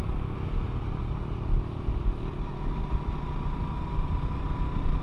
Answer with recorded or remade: recorded